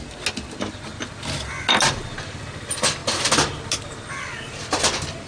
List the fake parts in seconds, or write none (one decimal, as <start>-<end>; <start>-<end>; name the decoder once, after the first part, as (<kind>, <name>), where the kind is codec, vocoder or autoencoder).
none